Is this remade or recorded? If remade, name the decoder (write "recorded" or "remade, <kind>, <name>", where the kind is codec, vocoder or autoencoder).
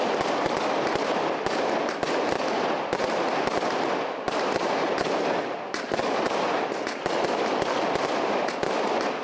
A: recorded